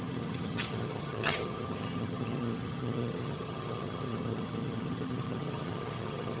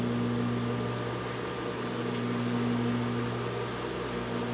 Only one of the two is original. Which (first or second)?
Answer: second